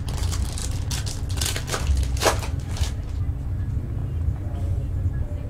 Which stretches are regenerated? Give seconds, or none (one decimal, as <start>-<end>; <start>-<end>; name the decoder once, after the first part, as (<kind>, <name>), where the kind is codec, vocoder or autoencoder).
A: 2.5-3.2 (vocoder, BigVGAN v2); 4.0-5.1